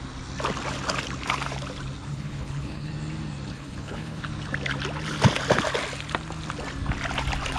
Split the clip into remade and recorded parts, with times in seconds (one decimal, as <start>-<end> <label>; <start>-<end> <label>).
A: 0.0-2.1 recorded; 2.1-2.9 remade; 2.9-3.5 recorded; 3.5-4.2 remade; 4.2-7.6 recorded